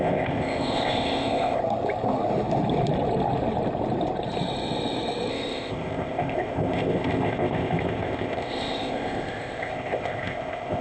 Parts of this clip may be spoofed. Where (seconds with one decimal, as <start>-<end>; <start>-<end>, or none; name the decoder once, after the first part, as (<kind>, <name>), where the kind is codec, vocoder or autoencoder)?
0.0-1.6 (codec, ZipCodec); 5.3-10.8